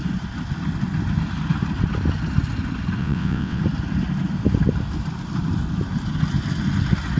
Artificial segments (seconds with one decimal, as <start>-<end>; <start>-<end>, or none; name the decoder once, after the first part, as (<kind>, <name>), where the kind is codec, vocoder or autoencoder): 3.0-3.6 (vocoder, WaveNeXt)